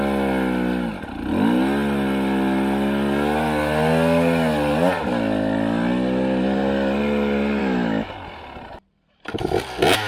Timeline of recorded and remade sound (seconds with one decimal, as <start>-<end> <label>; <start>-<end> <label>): 0.0-7.6 recorded; 7.6-8.1 remade; 8.1-10.1 recorded